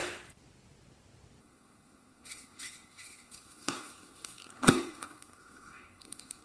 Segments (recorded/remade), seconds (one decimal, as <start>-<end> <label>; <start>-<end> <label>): 0.0-1.4 recorded; 1.4-6.4 remade